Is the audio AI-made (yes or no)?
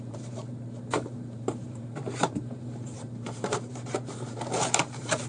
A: yes